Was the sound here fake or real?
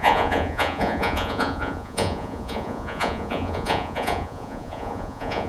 fake